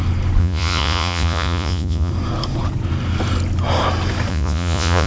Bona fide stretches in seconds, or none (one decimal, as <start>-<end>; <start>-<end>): 0.0-0.4; 2.1-4.3